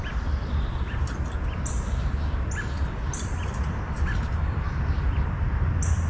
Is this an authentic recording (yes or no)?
yes